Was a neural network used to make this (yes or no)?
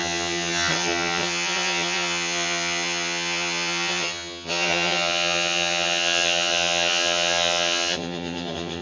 yes